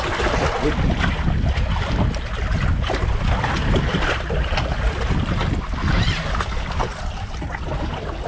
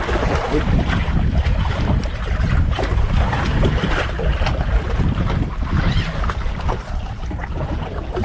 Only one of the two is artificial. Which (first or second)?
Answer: second